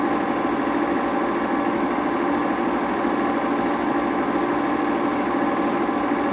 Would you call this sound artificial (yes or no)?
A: no